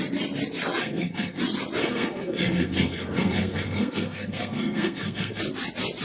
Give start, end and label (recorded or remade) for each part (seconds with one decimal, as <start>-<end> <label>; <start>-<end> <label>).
0.0-0.8 recorded; 0.8-1.4 remade; 1.4-1.8 recorded; 1.8-5.4 remade; 5.4-6.0 recorded